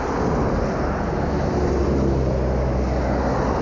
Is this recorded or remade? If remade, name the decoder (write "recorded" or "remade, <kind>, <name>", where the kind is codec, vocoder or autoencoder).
recorded